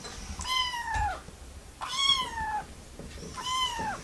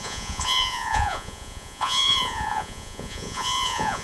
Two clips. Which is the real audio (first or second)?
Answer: first